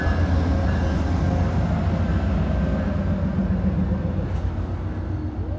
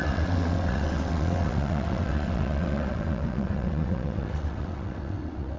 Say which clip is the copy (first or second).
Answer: second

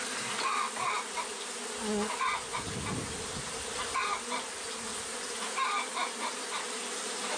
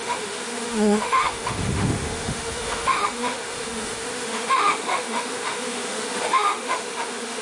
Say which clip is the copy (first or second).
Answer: second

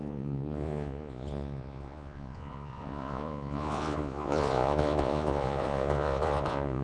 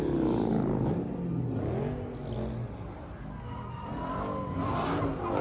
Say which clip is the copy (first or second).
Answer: first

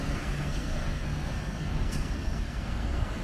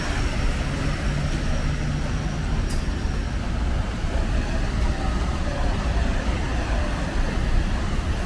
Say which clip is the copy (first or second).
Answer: first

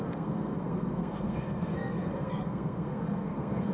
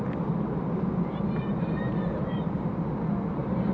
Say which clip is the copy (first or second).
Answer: first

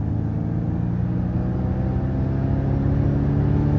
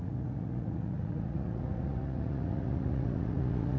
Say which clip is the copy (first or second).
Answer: second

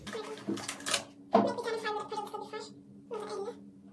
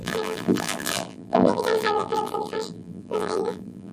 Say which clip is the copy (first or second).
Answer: second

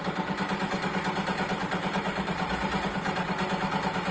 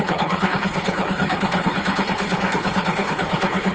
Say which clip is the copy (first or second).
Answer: second